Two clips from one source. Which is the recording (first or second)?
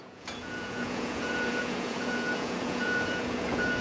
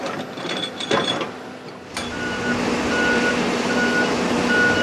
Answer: second